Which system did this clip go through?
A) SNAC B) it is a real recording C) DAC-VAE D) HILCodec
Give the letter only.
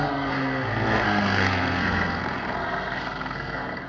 A